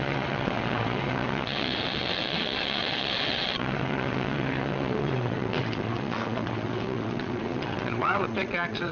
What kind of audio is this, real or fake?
fake